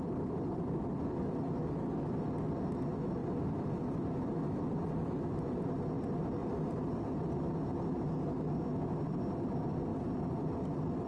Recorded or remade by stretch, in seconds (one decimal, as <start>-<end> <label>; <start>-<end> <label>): 0.0-3.2 recorded; 3.2-3.7 remade; 3.7-6.4 recorded; 6.4-7.3 remade; 7.3-11.1 recorded